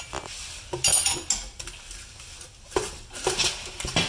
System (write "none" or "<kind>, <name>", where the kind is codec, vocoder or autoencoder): none